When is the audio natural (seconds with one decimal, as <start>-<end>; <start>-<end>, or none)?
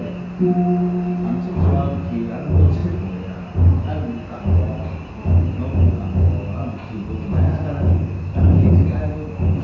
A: 0.0-9.6